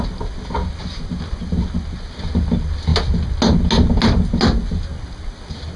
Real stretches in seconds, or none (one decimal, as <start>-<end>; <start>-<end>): 0.0-0.6; 1.2-5.8

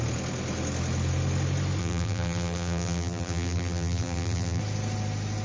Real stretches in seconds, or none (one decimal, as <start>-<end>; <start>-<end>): 0.0-1.8; 4.6-5.4

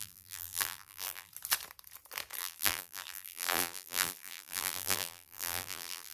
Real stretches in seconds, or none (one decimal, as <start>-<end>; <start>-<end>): 1.3-2.4

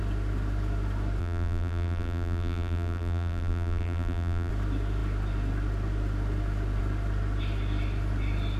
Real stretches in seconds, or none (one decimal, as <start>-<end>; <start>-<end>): 0.0-1.2; 4.5-8.6

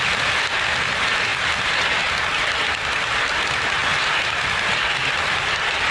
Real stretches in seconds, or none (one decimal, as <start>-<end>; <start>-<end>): 0.0-5.9

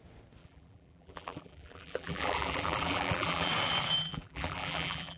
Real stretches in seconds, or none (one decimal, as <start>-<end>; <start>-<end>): 0.0-0.4; 3.5-4.1

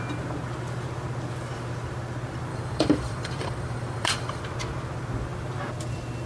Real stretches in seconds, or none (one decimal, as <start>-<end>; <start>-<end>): 0.0-2.5; 4.4-6.3